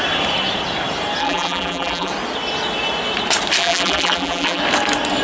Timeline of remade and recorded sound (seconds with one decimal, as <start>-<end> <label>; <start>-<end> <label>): 0.0-1.2 recorded; 1.2-2.1 remade; 2.1-3.6 recorded; 3.6-4.6 remade; 4.6-5.2 recorded